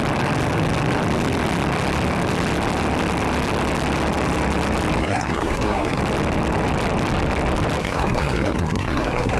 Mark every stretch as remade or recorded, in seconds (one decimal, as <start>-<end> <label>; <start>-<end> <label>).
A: 0.0-5.0 recorded; 5.0-6.0 remade; 6.0-7.8 recorded; 7.8-9.4 remade